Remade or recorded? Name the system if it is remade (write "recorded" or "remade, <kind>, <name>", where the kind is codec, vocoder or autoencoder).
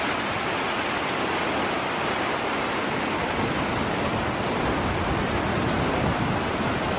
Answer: recorded